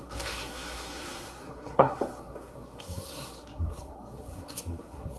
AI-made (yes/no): yes